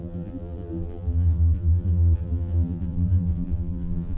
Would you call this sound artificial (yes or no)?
yes